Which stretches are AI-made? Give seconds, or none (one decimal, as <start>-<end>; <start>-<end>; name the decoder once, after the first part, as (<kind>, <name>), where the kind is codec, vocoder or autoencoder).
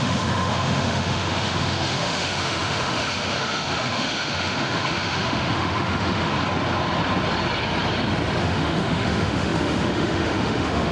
0.0-6.3 (autoencoder, DAC-VAE); 8.4-10.9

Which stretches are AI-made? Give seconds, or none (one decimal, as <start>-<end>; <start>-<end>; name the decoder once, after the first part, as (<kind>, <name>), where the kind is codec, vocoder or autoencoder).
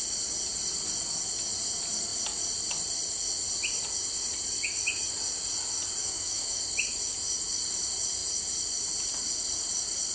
6.0-6.6 (autoencoder, DAC-VAE)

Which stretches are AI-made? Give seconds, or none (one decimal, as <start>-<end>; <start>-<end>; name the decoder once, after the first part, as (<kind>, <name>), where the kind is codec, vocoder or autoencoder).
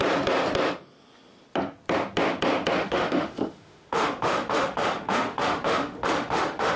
2.7-6.8 (autoencoder, DAC-VAE)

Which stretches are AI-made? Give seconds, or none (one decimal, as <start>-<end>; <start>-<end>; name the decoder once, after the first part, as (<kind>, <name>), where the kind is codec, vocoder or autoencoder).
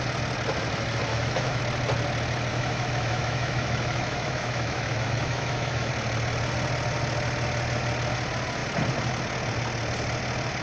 1.1-1.6 (autoencoder, DAC-VAE); 2.5-5.9